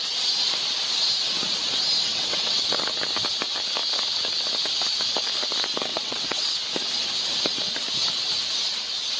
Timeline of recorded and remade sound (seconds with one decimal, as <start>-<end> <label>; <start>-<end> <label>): 0.0-2.0 recorded; 2.0-2.8 remade; 2.8-5.9 recorded; 5.9-6.5 remade; 6.5-9.2 recorded